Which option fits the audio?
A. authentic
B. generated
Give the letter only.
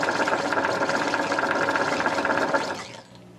A